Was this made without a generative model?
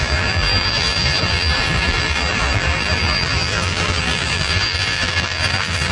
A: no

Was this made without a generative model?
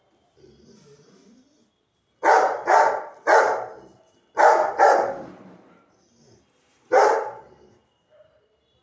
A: no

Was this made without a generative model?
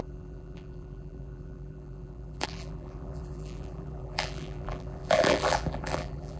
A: no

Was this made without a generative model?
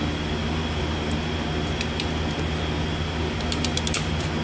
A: yes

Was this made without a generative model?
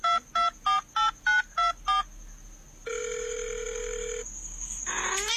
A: yes